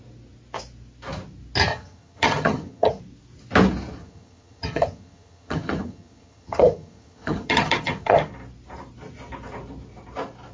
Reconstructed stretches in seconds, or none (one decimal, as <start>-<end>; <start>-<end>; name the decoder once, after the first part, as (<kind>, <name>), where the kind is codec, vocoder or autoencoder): 1.7-3.0 (vocoder, HiFi-GAN); 4.0-8.3